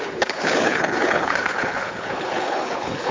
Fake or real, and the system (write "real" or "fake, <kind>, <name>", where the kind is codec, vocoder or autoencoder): fake, codec, HILCodec